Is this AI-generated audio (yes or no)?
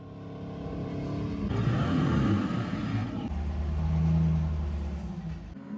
no